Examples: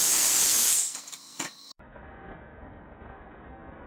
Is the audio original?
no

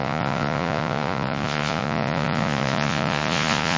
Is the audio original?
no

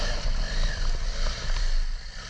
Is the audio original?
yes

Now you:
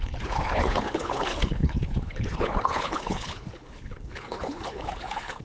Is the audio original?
no